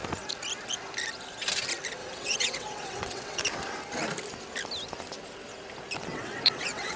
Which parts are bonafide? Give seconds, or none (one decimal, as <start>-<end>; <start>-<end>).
0.0-2.0; 3.4-6.1